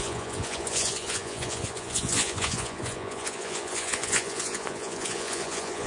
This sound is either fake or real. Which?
fake